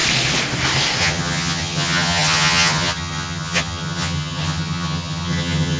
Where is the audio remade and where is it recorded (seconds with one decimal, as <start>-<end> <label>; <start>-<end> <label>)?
0.0-1.0 recorded; 1.0-5.8 remade